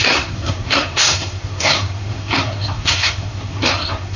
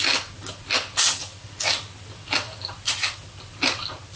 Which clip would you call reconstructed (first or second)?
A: first